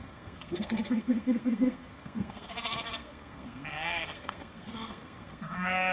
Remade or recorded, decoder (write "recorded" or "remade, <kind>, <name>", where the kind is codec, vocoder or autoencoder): remade, codec, SNAC